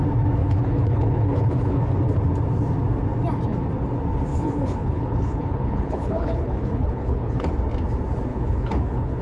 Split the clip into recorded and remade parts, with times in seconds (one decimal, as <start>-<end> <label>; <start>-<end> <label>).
0.0-0.4 recorded; 0.4-1.8 remade; 1.8-4.3 recorded; 4.3-7.5 remade; 7.5-8.3 recorded; 8.3-9.2 remade